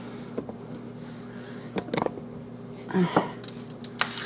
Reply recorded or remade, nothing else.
recorded